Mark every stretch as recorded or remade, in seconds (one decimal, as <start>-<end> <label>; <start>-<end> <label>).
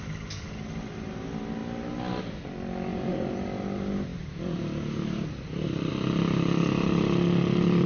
0.0-7.9 recorded